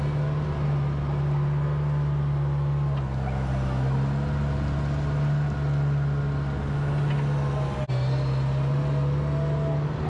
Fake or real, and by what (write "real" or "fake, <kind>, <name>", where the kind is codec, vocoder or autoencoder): real